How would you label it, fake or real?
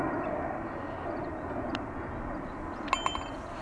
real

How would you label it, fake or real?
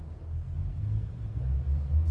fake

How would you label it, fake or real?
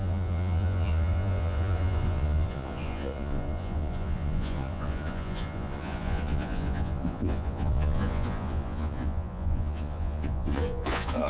fake